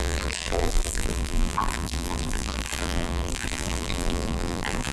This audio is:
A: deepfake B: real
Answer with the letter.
A